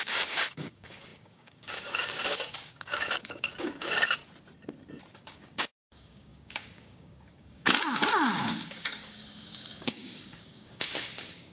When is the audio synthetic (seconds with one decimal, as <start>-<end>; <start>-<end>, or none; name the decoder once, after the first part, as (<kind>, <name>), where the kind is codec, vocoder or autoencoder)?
0.0-4.2 (codec, DAC); 5.1-11.5